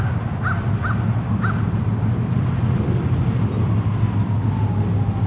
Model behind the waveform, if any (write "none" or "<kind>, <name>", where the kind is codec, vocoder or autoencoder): none